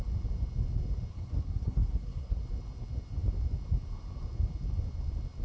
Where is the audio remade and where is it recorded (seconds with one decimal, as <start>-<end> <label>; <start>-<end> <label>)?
0.0-1.1 recorded; 1.1-2.4 remade; 2.4-5.4 recorded